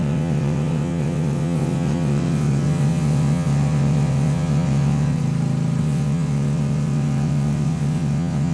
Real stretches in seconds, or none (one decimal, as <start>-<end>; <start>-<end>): 5.2-5.8